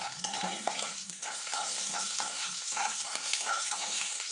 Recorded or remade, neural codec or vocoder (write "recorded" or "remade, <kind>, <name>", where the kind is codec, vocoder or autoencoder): remade, codec, SNAC